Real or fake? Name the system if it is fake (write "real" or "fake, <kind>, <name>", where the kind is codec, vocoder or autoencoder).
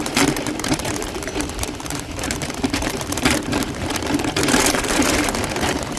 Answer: fake, vocoder, BigVGAN v2